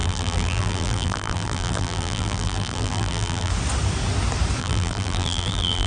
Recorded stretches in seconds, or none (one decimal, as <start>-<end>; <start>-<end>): 3.5-4.6